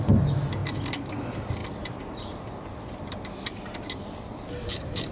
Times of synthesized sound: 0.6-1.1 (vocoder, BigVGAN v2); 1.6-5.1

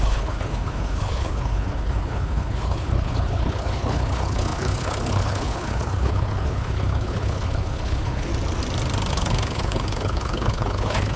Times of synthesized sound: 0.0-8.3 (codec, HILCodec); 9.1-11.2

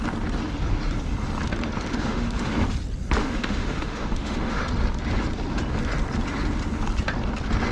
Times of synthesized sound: 1.9-2.5 (autoencoder, DAC-VAE); 3.2-4.6

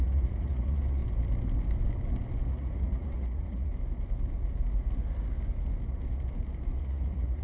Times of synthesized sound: 0.0-1.0 (vocoder, Vocos); 2.5-3.7; 6.8-7.4